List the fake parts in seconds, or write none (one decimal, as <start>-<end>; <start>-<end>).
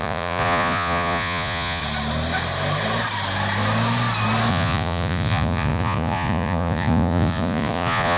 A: 0.0-1.8; 4.5-8.2